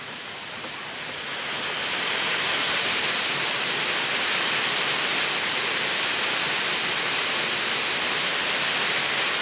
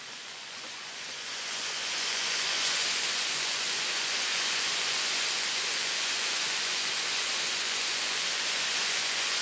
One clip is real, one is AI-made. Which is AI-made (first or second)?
second